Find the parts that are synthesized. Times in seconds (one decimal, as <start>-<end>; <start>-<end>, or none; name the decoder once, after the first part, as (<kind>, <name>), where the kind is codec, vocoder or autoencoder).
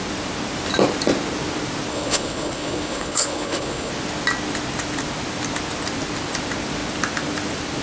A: 1.9-3.9 (codec, HILCodec)